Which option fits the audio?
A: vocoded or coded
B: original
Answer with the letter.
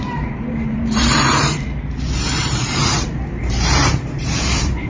A